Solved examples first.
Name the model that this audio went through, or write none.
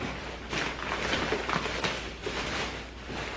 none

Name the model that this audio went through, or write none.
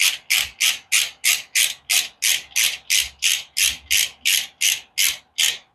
none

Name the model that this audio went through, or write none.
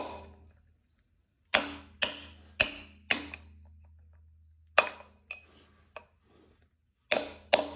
none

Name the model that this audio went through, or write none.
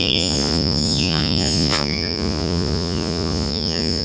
vocoder, Vocos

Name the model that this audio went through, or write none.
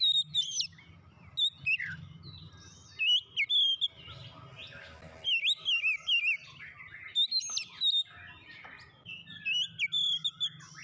none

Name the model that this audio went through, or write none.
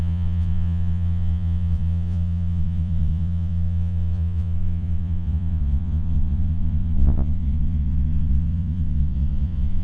vocoder, Vocos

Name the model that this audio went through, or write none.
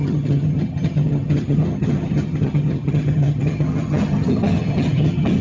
vocoder, HiFi-GAN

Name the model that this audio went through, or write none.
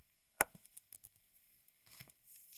codec, SNAC